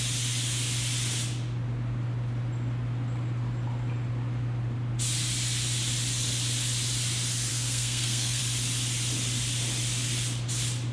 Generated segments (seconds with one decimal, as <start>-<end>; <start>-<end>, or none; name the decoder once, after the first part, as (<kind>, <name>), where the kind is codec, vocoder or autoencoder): 7.5-8.4 (codec, SNAC)